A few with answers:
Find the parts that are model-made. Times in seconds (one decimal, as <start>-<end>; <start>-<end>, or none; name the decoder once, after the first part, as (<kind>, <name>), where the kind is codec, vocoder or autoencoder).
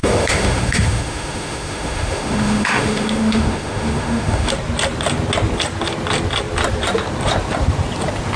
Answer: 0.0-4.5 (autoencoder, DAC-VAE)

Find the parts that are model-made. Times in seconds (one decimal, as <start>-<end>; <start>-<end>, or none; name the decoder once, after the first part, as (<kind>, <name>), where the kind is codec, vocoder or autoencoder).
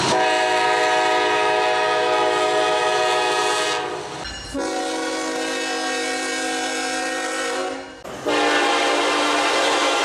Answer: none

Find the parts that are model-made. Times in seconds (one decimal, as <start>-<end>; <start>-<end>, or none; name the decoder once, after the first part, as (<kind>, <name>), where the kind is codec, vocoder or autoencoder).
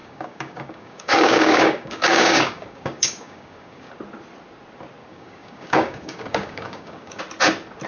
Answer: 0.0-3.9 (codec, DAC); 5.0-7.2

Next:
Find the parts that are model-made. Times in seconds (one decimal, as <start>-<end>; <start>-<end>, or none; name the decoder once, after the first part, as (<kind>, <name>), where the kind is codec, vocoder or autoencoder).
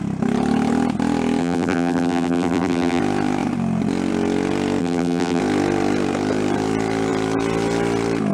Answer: 1.4-3.0 (vocoder, BigVGAN v2); 4.8-5.4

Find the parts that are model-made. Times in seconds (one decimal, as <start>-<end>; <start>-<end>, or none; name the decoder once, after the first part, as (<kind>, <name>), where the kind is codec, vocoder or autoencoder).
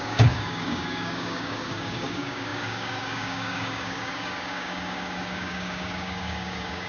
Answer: 0.0-6.9 (codec, DAC)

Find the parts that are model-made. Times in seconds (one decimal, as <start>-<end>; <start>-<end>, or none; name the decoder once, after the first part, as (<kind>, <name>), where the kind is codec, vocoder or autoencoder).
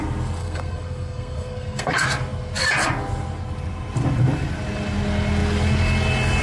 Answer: 0.4-1.9 (codec, SNAC)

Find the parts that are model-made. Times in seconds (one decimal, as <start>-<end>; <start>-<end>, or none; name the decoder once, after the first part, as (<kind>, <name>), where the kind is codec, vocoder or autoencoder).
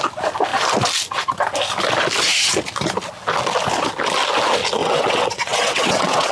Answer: 4.8-6.3 (vocoder, WaveNeXt)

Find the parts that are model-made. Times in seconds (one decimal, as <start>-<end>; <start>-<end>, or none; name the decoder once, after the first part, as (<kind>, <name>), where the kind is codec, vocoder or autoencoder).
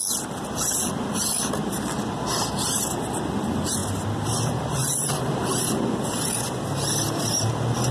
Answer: none